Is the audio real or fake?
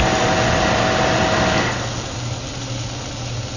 real